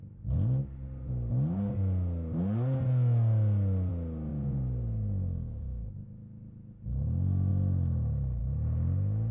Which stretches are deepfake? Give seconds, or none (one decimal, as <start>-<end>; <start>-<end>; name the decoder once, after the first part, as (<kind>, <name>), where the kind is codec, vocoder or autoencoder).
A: 4.3-5.9 (vocoder, Vocos)